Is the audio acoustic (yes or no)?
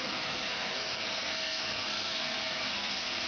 no